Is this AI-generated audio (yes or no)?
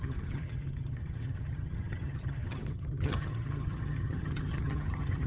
yes